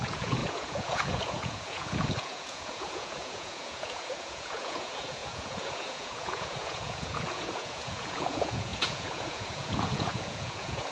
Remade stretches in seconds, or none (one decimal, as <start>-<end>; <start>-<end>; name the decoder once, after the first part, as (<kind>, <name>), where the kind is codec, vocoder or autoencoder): 0.0-10.9 (vocoder, Vocos)